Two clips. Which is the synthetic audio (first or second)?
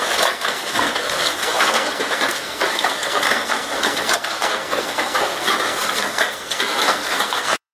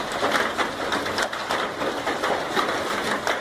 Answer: first